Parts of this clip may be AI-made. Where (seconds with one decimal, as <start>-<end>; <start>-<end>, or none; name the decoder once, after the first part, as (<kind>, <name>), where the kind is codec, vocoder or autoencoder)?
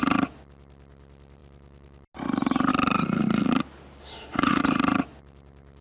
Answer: 4.0-4.6 (autoencoder, DAC-VAE)